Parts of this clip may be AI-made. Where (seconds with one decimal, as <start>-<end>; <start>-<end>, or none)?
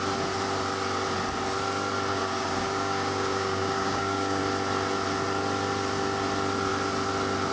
2.1-4.4